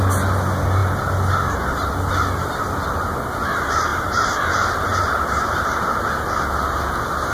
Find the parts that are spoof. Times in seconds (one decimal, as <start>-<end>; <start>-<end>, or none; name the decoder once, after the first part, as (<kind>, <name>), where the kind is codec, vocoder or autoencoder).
none